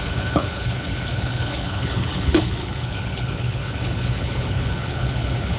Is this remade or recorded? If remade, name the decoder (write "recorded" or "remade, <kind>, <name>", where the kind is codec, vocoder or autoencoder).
remade, codec, HILCodec